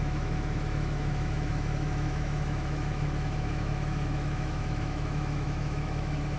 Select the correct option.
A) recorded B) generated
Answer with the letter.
B